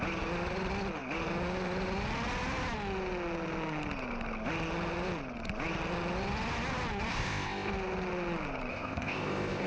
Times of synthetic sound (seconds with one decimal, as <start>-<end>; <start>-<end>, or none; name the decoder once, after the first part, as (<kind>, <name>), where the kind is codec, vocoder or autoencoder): 7.1-7.7 (codec, ZipCodec); 8.7-9.7